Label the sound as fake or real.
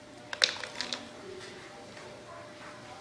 real